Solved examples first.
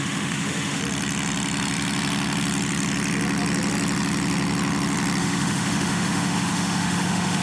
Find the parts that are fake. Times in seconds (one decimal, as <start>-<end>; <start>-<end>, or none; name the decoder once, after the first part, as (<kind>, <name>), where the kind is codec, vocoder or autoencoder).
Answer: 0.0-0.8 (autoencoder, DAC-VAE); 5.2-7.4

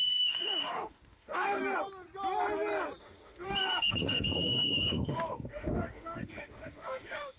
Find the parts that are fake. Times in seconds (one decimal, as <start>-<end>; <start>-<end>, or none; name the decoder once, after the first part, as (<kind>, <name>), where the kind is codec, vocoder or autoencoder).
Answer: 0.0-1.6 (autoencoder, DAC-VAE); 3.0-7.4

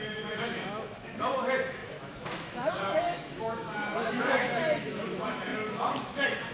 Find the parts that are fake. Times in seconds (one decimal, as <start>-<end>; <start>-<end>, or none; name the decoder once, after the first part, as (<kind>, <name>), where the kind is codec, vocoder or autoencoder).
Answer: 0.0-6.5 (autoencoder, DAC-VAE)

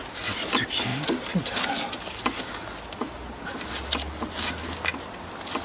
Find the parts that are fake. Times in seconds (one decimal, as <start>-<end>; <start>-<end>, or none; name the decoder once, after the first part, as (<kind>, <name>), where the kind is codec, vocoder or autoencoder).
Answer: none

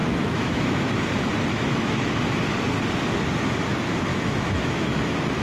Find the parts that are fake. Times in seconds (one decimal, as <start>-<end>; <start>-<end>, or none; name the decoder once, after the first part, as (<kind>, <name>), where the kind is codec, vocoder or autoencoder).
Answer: 0.0-1.0 (autoencoder, DAC-VAE); 1.5-2.4; 4.1-5.0

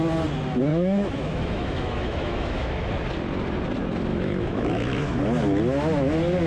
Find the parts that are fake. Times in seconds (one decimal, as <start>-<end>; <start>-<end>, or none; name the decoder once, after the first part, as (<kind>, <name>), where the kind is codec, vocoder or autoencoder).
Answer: 0.7-2.9 (autoencoder, DAC-VAE); 4.1-5.2